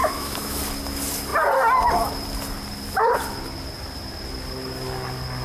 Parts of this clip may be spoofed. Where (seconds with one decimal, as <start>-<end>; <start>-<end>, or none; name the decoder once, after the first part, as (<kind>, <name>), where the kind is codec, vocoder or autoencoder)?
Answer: 0.0-0.6 (autoencoder, DAC-VAE)